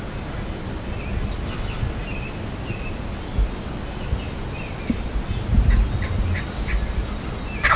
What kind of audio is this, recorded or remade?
recorded